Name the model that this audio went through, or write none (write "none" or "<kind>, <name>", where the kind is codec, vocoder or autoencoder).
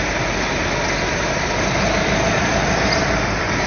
none